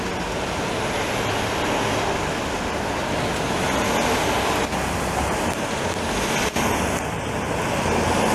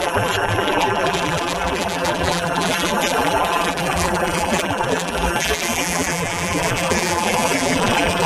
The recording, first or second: first